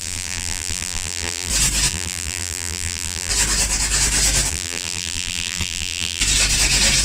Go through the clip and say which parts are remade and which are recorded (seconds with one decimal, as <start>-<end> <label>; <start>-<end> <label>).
0.0-1.5 remade; 1.5-1.9 recorded; 1.9-3.3 remade; 3.3-4.5 recorded; 4.5-6.2 remade; 6.2-7.0 recorded